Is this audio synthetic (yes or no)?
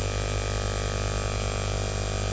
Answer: no